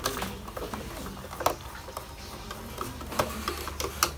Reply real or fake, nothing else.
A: real